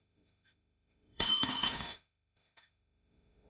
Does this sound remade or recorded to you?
remade